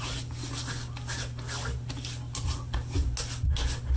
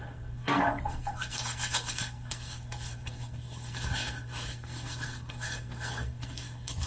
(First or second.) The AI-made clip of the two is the second